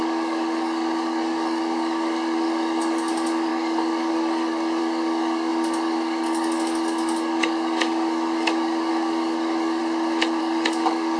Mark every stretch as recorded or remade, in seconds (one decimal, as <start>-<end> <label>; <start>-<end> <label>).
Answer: 0.0-9.8 remade; 9.8-10.4 recorded; 10.4-11.2 remade